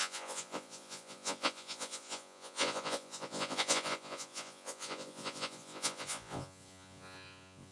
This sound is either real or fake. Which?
fake